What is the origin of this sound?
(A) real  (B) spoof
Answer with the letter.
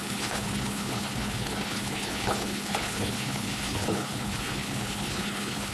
B